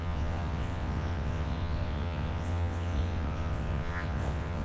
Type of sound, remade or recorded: remade